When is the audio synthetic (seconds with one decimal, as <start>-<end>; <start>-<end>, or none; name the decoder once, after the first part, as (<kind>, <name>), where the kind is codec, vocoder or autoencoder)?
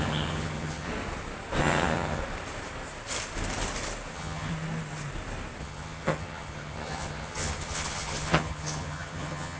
0.0-0.9 (vocoder, HiFi-GAN); 1.6-2.2; 4.1-4.5; 5.6-9.6